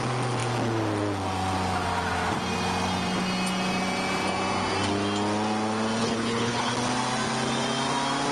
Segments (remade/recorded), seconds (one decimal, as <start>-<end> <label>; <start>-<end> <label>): 0.0-6.0 recorded; 6.0-6.7 remade; 6.7-8.3 recorded